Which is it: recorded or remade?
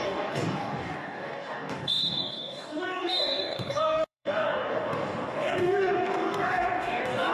remade